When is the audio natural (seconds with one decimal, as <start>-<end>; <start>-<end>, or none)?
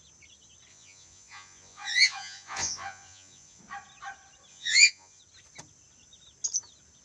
0.0-0.7; 3.6-4.5; 5.2-7.0